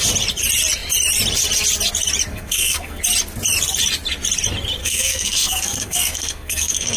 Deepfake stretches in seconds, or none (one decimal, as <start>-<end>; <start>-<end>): 2.3-3.0; 4.8-7.0